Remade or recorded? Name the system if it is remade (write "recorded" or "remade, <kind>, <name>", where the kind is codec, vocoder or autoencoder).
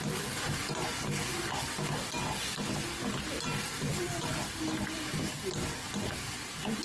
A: recorded